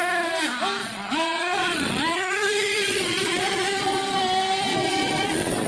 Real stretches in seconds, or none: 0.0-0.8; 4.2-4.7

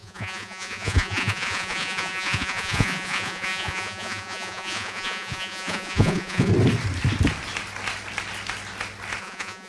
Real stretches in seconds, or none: 6.5-9.2

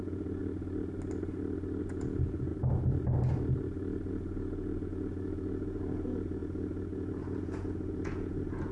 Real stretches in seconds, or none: 0.4-1.8; 2.5-4.1